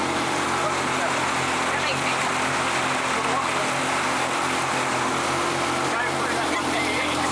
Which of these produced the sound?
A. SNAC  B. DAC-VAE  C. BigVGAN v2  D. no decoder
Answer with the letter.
D